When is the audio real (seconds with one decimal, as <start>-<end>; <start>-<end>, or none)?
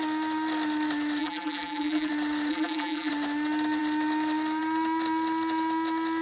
0.0-1.2; 2.1-2.5; 3.1-6.2